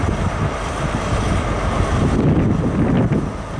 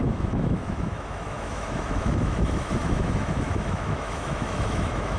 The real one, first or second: first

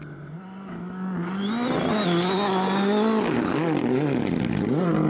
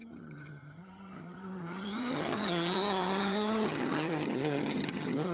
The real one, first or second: first